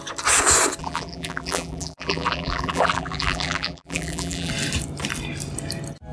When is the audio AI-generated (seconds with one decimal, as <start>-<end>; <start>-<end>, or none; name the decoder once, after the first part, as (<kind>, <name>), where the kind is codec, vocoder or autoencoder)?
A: 0.8-4.5 (vocoder, BigVGAN v2)